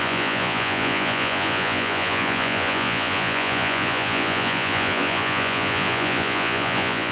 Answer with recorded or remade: remade